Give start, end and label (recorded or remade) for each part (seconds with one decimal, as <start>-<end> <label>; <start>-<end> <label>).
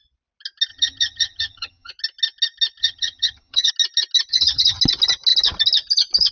0.0-0.7 recorded; 0.7-1.9 remade; 1.9-2.8 recorded; 2.8-3.7 remade; 3.7-4.3 recorded; 4.3-4.8 remade; 4.8-6.3 recorded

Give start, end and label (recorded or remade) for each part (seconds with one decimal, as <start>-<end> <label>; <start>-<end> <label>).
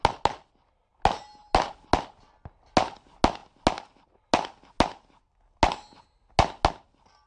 0.0-7.3 recorded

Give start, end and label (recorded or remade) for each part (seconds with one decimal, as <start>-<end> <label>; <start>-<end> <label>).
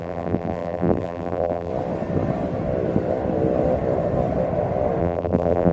0.0-1.7 remade; 1.7-5.0 recorded; 5.0-5.7 remade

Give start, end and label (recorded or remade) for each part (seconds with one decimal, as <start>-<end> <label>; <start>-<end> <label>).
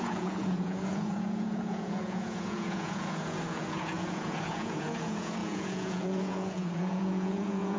0.0-7.8 remade